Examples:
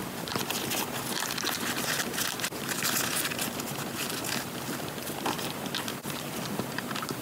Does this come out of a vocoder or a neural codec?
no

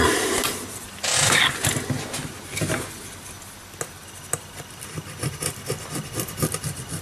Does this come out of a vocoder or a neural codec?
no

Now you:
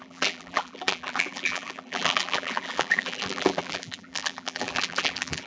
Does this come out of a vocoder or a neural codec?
yes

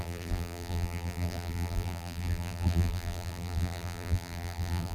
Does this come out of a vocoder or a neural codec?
yes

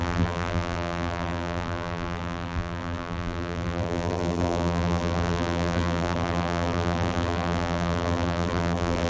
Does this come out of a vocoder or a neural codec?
yes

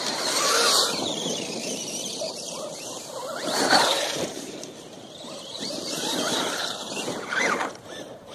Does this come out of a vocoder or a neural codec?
yes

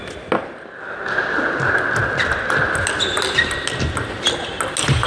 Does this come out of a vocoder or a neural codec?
no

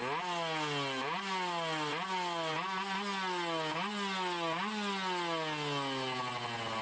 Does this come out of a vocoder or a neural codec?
no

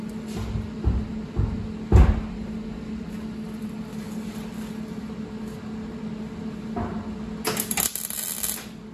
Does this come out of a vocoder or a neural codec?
no